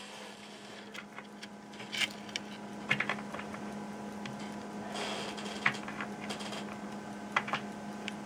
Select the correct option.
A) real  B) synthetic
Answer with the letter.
A